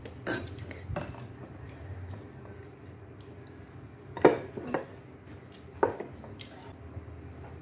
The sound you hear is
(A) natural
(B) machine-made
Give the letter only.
A